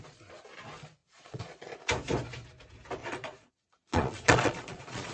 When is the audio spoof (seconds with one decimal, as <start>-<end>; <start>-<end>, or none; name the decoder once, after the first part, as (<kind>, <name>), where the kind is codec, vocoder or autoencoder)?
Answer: 1.0-1.8 (vocoder, Vocos); 3.0-5.1